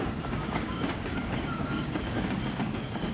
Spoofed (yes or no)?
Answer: yes